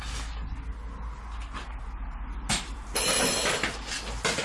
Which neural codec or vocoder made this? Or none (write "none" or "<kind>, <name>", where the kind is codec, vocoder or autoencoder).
none